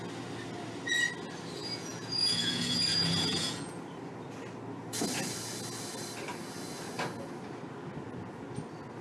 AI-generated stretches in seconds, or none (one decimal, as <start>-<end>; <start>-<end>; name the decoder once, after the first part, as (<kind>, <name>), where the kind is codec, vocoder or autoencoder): 1.6-3.8 (vocoder, Vocos)